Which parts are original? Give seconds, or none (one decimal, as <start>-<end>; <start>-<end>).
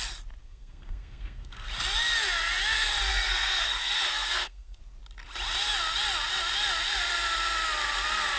0.0-0.4; 1.7-3.1; 4.8-8.4